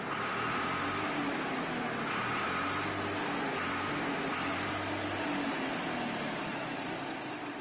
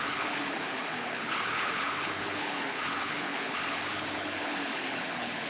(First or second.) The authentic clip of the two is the first